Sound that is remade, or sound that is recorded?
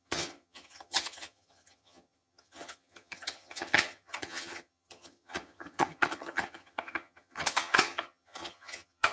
remade